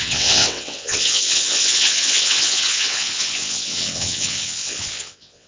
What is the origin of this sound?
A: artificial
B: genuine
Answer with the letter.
A